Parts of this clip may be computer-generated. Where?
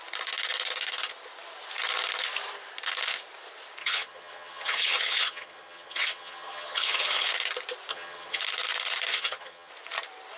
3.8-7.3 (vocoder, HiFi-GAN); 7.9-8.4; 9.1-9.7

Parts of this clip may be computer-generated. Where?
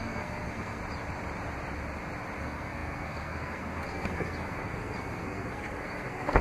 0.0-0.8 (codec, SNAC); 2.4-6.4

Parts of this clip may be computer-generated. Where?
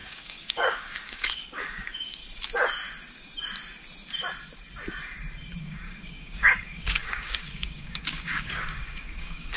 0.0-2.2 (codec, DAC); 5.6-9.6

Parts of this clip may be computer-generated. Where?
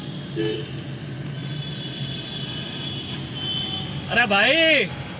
none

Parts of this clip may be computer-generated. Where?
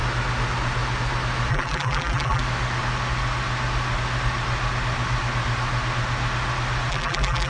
1.5-2.4 (vocoder, BigVGAN v2); 6.9-7.5